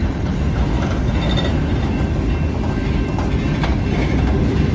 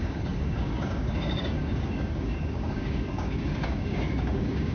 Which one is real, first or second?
first